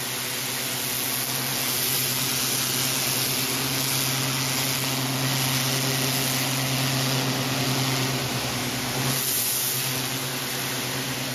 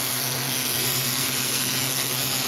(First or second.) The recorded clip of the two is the first